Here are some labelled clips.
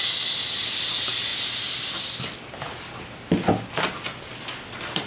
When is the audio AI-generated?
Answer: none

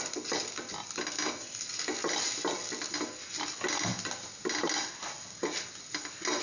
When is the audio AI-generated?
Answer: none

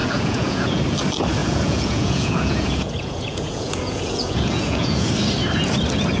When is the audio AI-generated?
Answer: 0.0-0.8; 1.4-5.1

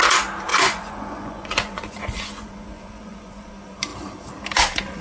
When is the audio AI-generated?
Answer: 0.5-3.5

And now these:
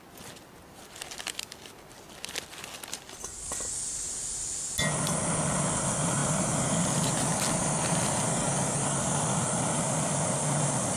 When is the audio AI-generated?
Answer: none

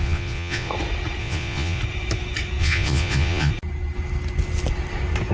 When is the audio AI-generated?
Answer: 0.0-0.7; 1.2-1.8; 2.6-3.5

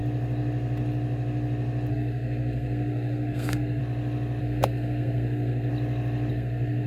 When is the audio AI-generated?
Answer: 1.9-3.8; 4.4-5.7; 6.3-6.9